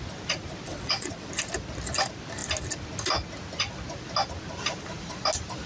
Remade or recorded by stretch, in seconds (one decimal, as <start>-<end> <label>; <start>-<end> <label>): 0.0-0.7 recorded; 0.7-1.3 remade; 1.3-5.7 recorded